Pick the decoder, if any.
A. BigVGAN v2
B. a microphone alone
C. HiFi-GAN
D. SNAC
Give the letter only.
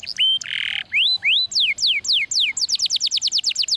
B